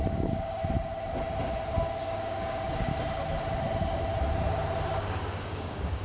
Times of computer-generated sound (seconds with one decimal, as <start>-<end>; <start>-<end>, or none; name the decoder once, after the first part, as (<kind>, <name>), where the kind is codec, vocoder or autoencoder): 0.0-0.6 (codec, DAC); 1.9-2.9; 4.8-6.0

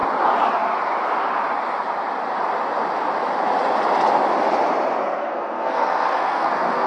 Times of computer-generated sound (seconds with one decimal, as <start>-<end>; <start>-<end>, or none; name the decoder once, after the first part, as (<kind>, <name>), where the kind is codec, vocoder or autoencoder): 5.0-6.9 (codec, SNAC)

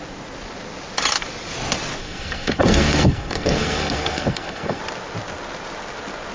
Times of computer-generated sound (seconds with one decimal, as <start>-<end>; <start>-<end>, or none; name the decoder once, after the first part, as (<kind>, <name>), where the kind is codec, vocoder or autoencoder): 2.0-4.8 (codec, SNAC)

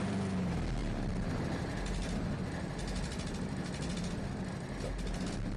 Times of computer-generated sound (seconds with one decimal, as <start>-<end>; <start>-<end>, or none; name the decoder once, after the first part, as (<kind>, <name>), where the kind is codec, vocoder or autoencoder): none